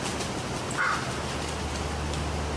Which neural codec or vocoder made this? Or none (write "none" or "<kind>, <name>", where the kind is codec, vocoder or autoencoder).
none